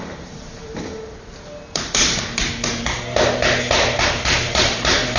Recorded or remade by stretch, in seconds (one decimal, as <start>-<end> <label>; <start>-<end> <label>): 0.0-0.9 remade; 0.9-4.0 recorded; 4.0-5.2 remade